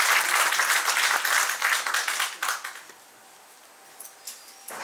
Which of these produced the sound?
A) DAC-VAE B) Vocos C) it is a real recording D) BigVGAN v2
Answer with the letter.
C